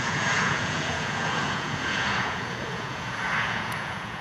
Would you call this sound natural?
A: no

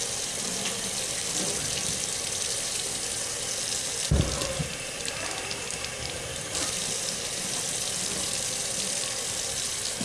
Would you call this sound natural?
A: no